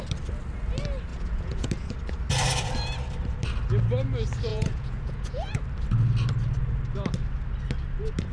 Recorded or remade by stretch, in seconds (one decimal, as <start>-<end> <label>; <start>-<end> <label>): 0.0-1.1 recorded; 1.1-1.7 remade; 1.7-4.5 recorded; 4.5-5.6 remade; 5.6-8.3 recorded

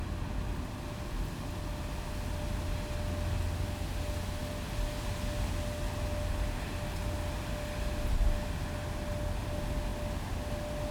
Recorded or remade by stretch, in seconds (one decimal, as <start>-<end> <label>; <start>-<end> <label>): 0.0-10.9 recorded